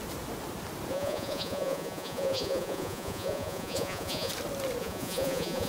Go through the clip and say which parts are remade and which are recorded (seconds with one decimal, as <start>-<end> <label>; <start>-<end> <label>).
0.0-0.9 recorded; 0.9-4.3 remade; 4.3-4.8 recorded; 4.8-5.7 remade